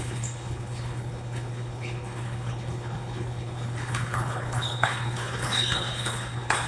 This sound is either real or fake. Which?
fake